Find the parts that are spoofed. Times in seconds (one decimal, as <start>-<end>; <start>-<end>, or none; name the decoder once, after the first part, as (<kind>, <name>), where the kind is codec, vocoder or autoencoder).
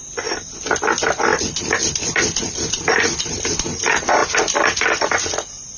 1.3-3.0 (vocoder, BigVGAN v2)